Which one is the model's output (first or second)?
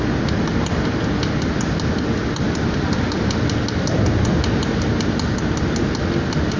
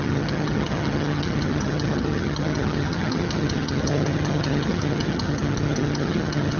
second